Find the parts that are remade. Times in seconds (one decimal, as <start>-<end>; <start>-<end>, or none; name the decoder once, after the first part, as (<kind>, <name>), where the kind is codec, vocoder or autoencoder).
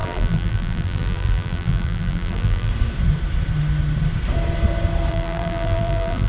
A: 0.0-2.7 (vocoder, BigVGAN v2); 5.1-6.3